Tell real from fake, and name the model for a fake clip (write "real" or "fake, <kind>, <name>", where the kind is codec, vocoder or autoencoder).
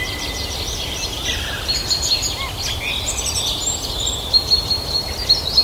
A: fake, vocoder, BigVGAN v2